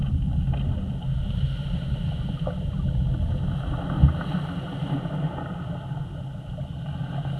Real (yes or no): yes